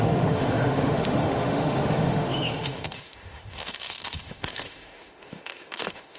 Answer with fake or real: fake